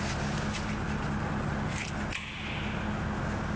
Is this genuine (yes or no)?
yes